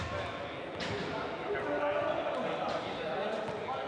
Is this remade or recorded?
recorded